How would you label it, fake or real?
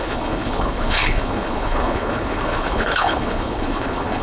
fake